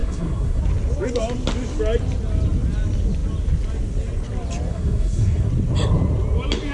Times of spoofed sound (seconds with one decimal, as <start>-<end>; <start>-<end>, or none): 0.0-0.6; 4.7-5.5